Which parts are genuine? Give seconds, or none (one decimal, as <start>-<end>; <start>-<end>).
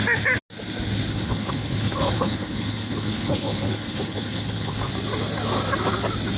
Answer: 0.0-1.1; 4.9-6.4